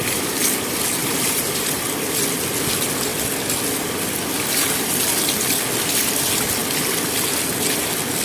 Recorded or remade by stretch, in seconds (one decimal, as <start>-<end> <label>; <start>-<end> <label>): 0.0-1.0 recorded; 1.0-1.8 remade; 1.8-8.2 recorded